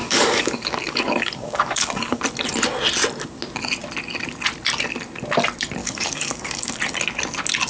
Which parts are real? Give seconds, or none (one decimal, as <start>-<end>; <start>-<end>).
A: 2.2-5.8; 6.8-7.7

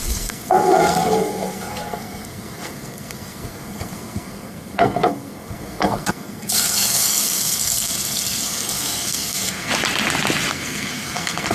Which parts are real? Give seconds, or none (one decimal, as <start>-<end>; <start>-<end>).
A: 9.7-10.5

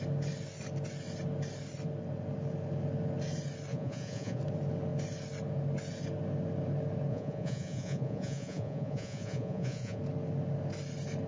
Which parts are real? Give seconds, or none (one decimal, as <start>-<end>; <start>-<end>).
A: 0.0-3.7; 4.4-7.1; 10.0-11.3